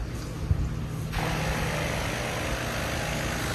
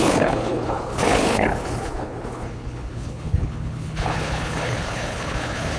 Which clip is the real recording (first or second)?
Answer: first